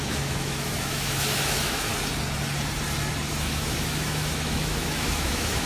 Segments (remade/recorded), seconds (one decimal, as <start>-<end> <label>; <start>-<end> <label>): 0.0-1.9 remade; 1.9-3.3 recorded; 3.3-5.7 remade